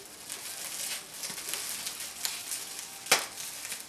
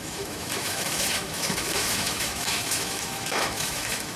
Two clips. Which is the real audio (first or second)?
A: first